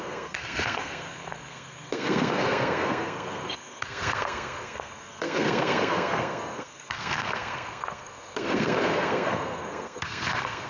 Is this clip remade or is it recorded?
remade